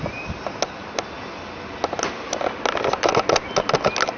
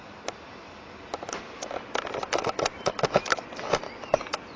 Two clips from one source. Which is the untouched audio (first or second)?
first